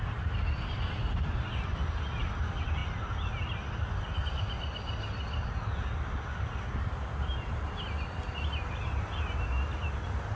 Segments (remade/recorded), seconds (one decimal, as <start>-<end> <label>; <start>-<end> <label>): 0.0-10.4 recorded